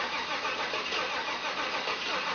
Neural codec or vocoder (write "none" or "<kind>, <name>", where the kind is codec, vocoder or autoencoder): none